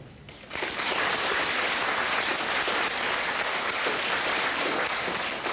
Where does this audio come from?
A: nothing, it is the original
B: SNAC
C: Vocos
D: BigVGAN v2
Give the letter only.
A